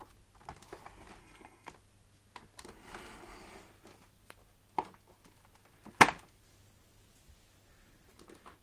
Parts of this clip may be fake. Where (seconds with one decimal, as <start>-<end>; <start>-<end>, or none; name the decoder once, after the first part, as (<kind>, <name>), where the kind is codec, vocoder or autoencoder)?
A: 1.2-1.7 (codec, SNAC)